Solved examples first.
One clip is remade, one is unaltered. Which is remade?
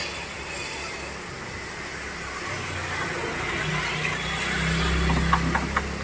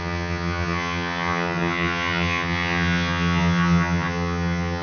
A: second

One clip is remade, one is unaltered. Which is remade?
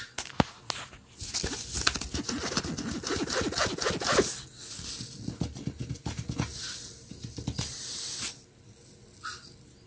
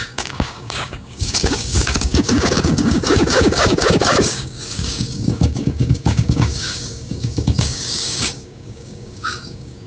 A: second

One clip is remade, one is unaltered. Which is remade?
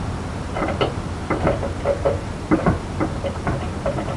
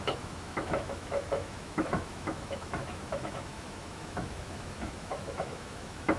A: second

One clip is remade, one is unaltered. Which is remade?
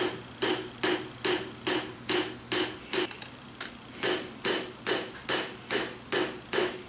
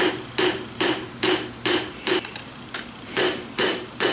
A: second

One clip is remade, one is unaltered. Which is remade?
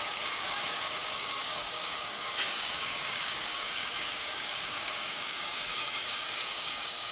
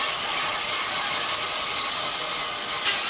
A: first